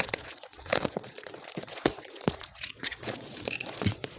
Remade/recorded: remade